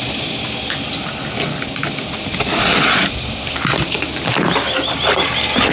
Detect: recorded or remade recorded